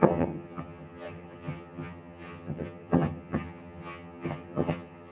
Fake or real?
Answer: fake